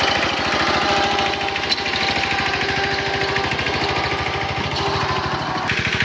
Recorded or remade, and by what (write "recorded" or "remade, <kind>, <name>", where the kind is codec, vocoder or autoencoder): recorded